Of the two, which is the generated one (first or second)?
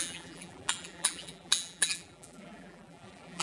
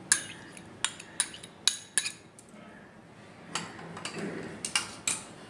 first